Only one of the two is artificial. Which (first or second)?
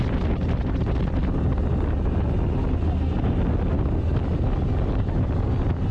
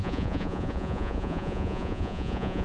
second